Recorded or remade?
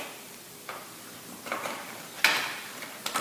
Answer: recorded